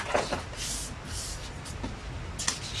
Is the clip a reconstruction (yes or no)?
no